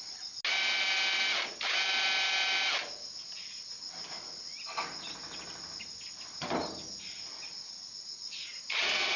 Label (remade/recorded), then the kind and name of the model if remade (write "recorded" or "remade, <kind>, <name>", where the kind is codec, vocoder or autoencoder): recorded